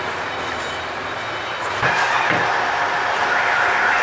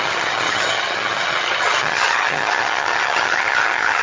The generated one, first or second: second